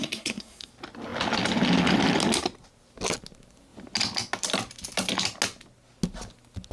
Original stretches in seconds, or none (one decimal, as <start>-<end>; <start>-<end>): 0.7-6.7